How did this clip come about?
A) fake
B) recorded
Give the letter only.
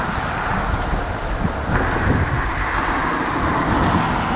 B